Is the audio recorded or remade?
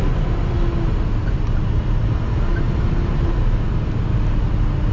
recorded